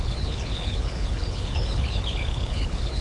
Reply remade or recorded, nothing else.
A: remade